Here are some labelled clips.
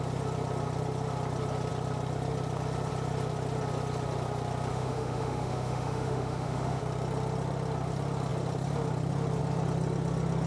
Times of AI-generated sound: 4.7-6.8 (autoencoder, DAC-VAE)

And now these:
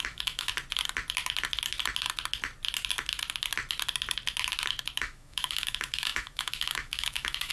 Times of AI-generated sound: 0.0-0.5 (autoencoder, DAC-VAE); 5.0-7.5

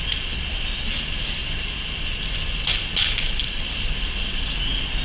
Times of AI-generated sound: none

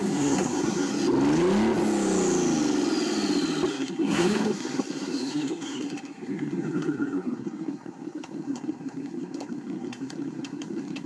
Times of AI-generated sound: 0.0-0.9 (codec, SNAC); 3.7-11.1

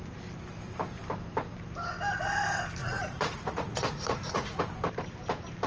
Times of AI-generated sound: 2.8-4.6 (vocoder, Vocos)